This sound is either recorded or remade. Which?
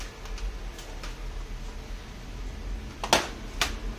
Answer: recorded